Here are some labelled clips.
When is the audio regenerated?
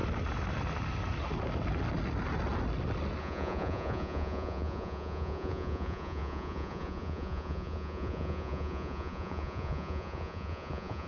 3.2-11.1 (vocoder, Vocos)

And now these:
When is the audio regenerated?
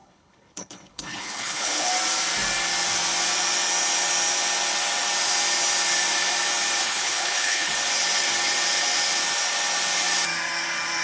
0.0-1.9 (codec, HILCodec); 6.8-7.7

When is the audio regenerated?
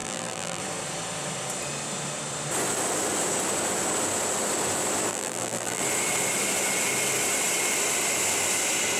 0.0-0.6 (vocoder, BigVGAN v2); 5.1-5.8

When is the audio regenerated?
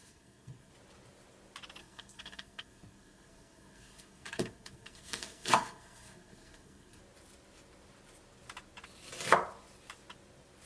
0.0-0.7 (codec, SNAC); 1.8-7.0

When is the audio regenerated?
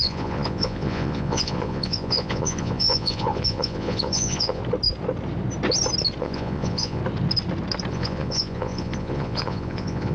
0.0-4.6 (vocoder, Vocos); 6.2-7.0; 7.9-10.1